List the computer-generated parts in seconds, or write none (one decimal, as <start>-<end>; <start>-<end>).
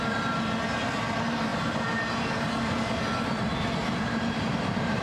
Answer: 3.8-5.0